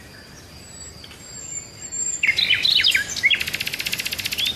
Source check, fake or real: real